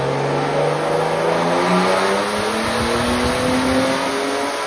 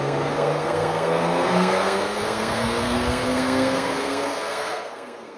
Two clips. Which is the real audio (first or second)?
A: first